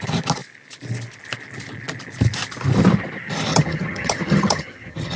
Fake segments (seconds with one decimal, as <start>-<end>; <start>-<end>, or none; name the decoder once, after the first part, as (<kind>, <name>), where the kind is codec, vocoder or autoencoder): 3.5-5.2 (vocoder, HiFi-GAN)